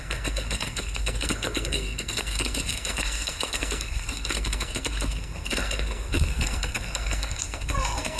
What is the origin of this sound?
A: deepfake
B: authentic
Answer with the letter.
A